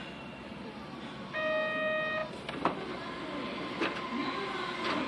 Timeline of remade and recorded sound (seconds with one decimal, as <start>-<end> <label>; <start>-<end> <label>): 0.0-0.5 recorded; 0.5-1.1 remade; 1.1-5.1 recorded